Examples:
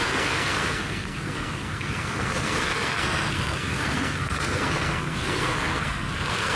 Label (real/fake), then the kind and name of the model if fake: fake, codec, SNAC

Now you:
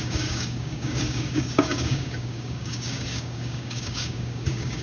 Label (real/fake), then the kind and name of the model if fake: fake, codec, DAC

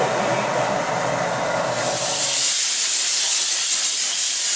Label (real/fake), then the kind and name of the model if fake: real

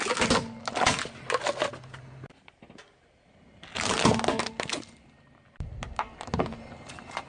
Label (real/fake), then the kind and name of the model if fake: real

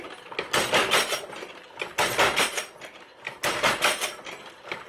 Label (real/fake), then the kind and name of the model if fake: real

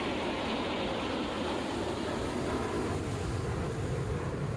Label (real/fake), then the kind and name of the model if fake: real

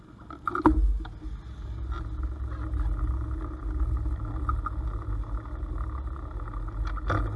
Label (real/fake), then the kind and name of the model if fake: real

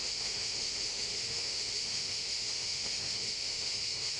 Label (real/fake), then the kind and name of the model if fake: fake, autoencoder, DAC-VAE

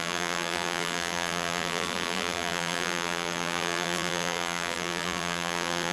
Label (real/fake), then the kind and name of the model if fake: fake, vocoder, BigVGAN v2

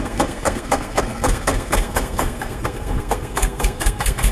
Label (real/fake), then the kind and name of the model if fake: fake, codec, SNAC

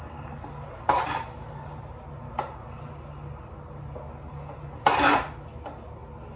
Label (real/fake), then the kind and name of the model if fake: real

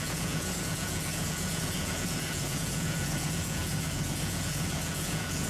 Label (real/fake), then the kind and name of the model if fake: fake, vocoder, Vocos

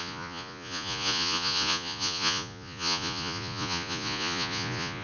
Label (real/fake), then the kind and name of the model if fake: fake, vocoder, Vocos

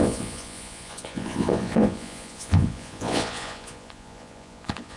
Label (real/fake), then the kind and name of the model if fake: fake, vocoder, Vocos